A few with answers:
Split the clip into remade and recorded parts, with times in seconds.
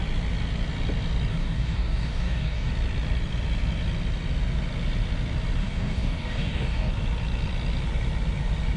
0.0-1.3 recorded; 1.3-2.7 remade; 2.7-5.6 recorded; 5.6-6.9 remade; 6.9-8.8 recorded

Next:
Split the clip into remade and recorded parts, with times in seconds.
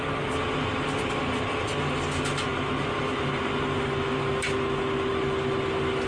0.0-6.1 recorded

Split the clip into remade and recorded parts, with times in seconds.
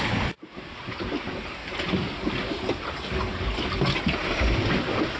0.0-5.2 recorded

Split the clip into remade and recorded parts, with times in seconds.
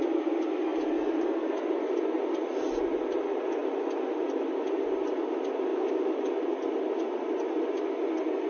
0.0-5.7 recorded; 5.7-6.3 remade; 6.3-8.5 recorded